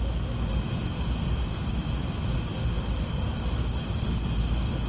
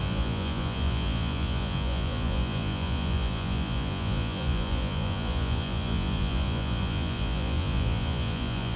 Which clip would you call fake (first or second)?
second